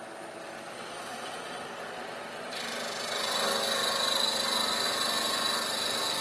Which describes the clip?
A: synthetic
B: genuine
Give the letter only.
B